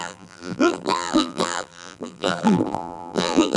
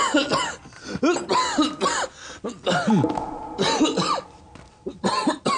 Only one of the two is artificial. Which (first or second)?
first